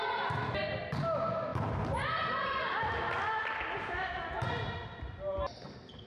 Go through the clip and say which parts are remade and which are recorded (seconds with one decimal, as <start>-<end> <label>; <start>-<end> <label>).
0.0-6.1 recorded